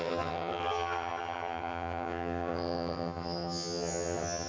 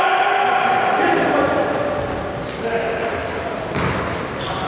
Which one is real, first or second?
second